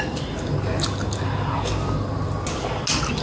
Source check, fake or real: real